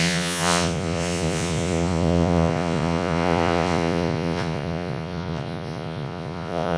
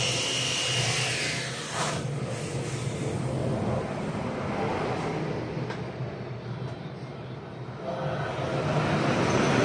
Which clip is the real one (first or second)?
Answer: second